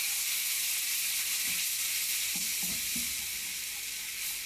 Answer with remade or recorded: recorded